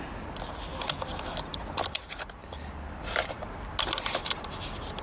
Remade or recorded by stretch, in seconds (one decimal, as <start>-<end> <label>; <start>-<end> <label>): 0.0-2.4 recorded; 2.4-3.6 remade; 3.6-4.2 recorded; 4.2-5.0 remade